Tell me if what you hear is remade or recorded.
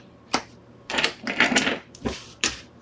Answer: remade